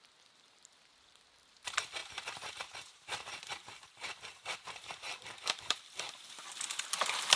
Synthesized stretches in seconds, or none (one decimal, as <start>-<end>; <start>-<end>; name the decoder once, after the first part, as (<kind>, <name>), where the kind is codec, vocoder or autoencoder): 2.0-5.8 (vocoder, BigVGAN v2)